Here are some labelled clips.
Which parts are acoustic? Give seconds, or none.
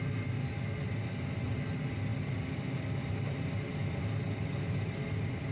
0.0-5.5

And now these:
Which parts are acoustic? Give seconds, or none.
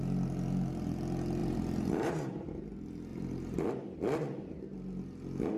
0.0-1.4; 2.6-3.1; 3.6-5.6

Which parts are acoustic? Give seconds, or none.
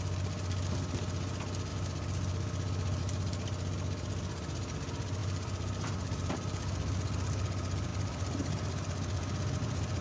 0.0-5.2; 6.3-10.0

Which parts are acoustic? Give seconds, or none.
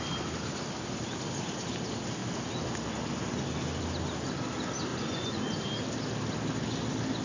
0.0-4.9; 5.4-7.2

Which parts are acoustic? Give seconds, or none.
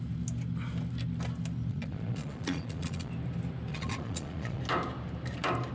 0.0-1.7; 3.1-3.7; 4.6-5.7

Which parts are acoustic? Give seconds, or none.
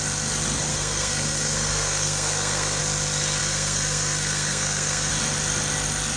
0.0-0.7; 2.8-3.4; 5.1-6.2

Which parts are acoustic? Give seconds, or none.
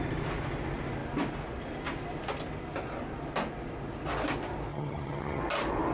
0.0-4.7; 5.4-5.9